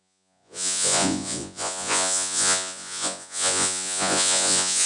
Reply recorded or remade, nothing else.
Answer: remade